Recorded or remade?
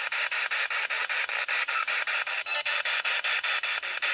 recorded